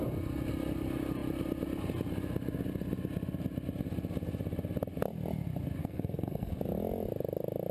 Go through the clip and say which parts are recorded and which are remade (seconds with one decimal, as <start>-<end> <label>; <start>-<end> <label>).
0.0-5.8 recorded; 5.8-6.5 remade; 6.5-7.7 recorded